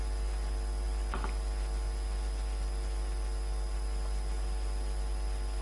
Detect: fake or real real